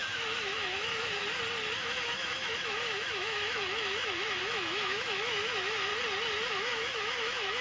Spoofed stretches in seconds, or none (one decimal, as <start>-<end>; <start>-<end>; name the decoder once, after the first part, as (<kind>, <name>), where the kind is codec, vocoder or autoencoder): 0.0-1.2 (autoencoder, DAC-VAE); 1.8-5.9; 6.5-7.6